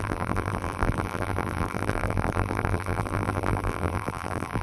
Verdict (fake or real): fake